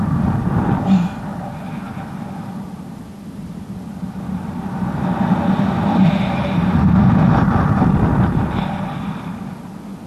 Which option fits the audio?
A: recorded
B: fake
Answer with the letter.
A